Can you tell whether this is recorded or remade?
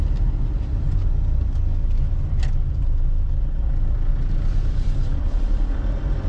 recorded